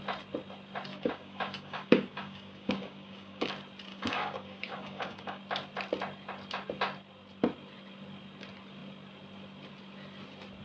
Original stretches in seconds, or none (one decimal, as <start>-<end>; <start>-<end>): 0.0-0.9; 3.5-3.9; 5.4-10.6